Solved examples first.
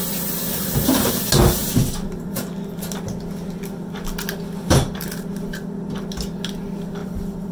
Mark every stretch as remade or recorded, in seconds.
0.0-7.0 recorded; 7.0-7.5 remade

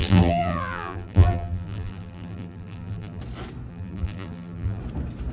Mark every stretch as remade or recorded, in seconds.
0.0-3.2 remade; 3.2-3.7 recorded; 3.7-4.8 remade; 4.8-5.3 recorded

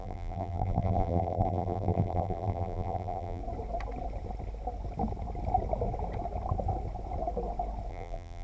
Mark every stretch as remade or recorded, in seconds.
0.0-3.4 remade; 3.4-7.9 recorded; 7.9-8.4 remade